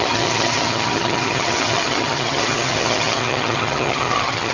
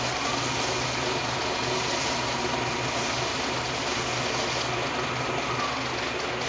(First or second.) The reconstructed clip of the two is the first